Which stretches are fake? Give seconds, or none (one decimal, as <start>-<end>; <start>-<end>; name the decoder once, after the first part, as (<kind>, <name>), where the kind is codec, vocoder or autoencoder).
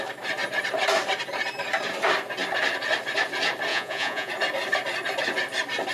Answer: 3.7-4.3 (vocoder, Vocos)